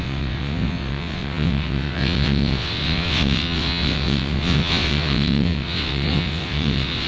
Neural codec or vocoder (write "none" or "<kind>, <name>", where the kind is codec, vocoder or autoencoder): vocoder, WaveNeXt